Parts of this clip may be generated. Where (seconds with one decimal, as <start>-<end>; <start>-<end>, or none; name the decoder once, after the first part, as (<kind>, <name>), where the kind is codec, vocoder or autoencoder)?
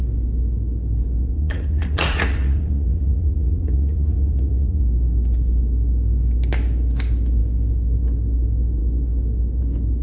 1.2-4.8 (vocoder, Vocos)